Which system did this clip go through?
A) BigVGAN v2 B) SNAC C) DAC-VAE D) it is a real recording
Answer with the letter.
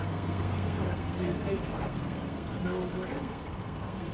B